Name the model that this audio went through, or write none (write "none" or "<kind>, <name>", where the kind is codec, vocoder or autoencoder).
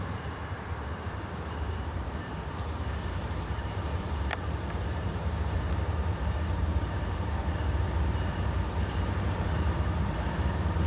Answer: vocoder, BigVGAN v2